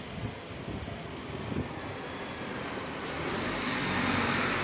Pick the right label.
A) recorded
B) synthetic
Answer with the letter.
A